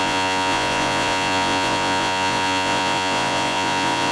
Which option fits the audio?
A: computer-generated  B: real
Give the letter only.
A